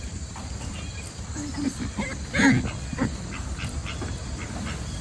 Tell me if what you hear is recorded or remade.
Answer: recorded